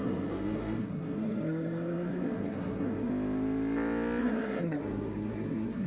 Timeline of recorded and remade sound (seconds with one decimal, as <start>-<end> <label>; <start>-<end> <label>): 0.0-3.1 remade; 3.1-4.2 recorded; 4.2-5.9 remade